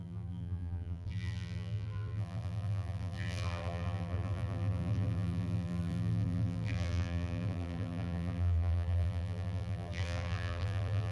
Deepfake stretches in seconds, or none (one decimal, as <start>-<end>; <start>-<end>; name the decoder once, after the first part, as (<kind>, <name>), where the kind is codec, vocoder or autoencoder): 0.0-11.1 (vocoder, BigVGAN v2)